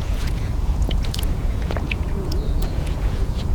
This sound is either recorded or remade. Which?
remade